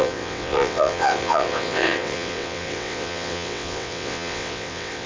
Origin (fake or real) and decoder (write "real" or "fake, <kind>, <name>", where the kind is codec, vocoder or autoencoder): fake, vocoder, WaveNeXt